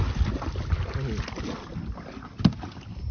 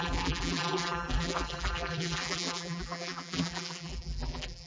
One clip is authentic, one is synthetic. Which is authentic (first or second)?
first